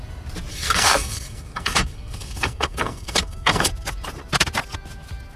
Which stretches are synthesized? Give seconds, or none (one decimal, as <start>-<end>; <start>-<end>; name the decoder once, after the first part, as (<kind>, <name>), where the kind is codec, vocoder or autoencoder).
0.5-3.7 (codec, SNAC)